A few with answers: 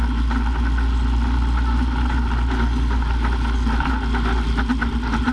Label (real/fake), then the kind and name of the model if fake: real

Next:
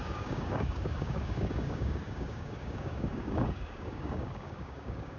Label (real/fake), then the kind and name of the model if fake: fake, codec, DAC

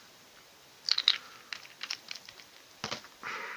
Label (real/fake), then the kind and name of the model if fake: real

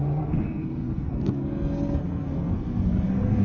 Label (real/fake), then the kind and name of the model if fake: fake, codec, SNAC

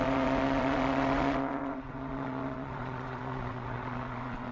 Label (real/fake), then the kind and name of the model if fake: fake, vocoder, WaveNeXt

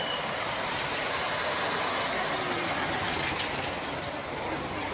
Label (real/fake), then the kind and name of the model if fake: real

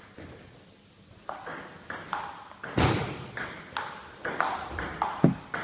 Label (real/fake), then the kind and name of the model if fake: real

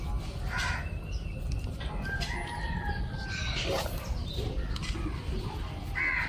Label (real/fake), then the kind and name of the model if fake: real